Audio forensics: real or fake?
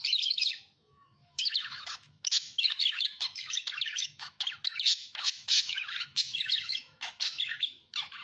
fake